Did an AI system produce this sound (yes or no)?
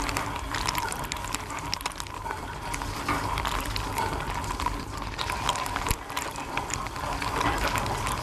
no